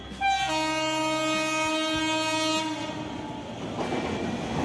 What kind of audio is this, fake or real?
real